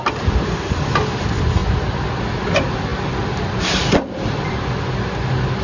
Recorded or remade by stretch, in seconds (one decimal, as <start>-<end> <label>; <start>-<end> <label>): 0.0-5.6 recorded

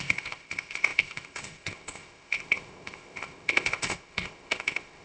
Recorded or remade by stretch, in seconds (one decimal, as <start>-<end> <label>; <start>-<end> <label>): 0.0-5.0 remade

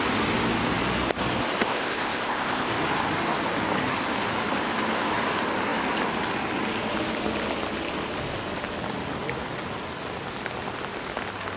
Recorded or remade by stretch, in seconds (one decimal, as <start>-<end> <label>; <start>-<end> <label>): 0.0-1.6 recorded; 1.6-2.7 remade; 2.7-11.6 recorded

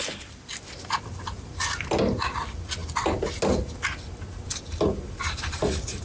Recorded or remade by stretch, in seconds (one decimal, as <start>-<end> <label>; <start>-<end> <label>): 0.0-6.0 recorded

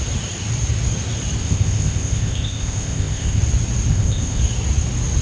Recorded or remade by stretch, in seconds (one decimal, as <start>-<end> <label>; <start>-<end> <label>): 0.0-1.4 recorded; 1.4-3.4 remade; 3.4-3.9 recorded; 3.9-4.4 remade; 4.4-5.2 recorded

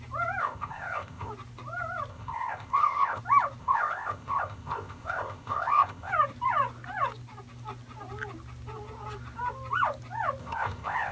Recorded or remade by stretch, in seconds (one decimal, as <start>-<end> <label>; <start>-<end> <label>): 0.0-0.4 recorded; 0.4-1.3 remade; 1.3-2.1 recorded; 2.1-3.2 remade; 3.2-3.6 recorded; 3.6-6.1 remade; 6.1-10.4 recorded; 10.4-11.1 remade

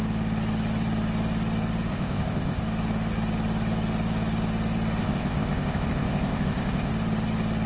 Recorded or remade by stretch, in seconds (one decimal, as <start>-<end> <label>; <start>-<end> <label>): 0.0-1.9 recorded; 1.9-2.6 remade; 2.6-5.0 recorded; 5.0-6.9 remade; 6.9-7.7 recorded

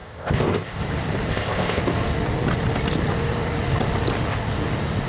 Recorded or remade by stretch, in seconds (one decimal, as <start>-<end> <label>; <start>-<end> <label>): 0.0-0.8 remade; 0.8-1.3 recorded; 1.3-1.8 remade; 1.8-5.1 recorded